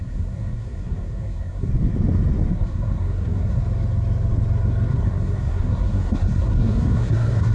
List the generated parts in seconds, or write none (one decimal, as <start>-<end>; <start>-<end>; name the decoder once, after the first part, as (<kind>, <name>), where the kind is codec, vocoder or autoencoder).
0.0-1.7 (codec, SNAC); 2.5-3.6; 4.9-7.5